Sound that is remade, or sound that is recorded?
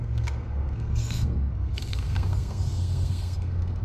remade